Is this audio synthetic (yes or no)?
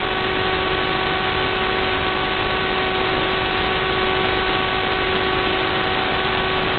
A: no